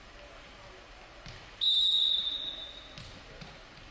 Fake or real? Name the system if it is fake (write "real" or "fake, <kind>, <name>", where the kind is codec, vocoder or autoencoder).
real